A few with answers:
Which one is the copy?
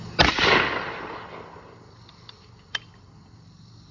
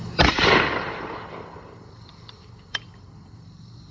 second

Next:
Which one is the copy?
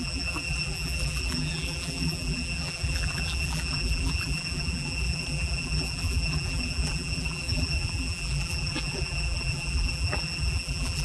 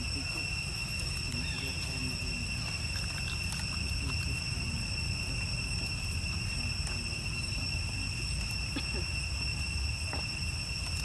first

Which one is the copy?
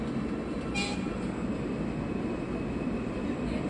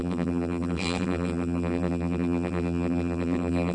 second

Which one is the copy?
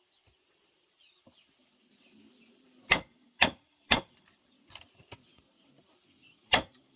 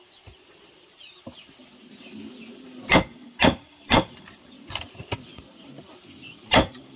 first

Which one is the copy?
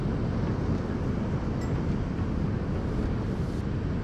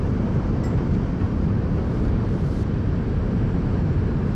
second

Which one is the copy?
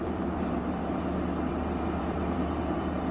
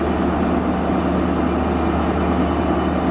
first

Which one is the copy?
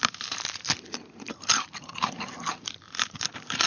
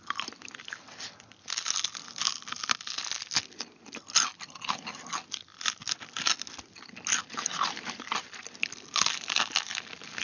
first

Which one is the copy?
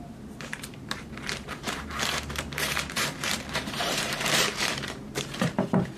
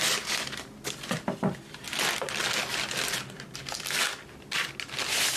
first